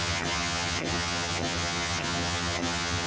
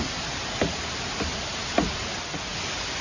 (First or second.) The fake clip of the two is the first